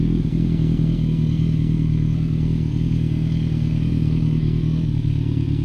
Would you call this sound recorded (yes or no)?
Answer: no